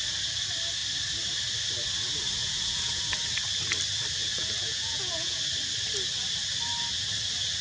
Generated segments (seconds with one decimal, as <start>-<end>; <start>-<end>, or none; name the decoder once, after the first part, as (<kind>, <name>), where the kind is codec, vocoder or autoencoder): 2.4-3.0 (vocoder, Vocos); 4.2-5.4